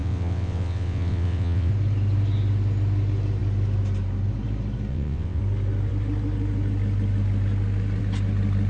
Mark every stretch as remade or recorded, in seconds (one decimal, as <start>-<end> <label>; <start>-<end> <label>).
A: 0.0-1.7 remade; 1.7-4.9 recorded; 4.9-5.4 remade; 5.4-8.7 recorded